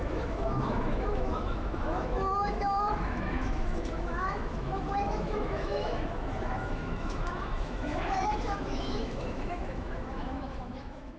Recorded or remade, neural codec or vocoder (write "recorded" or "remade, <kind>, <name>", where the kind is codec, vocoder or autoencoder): remade, autoencoder, DAC-VAE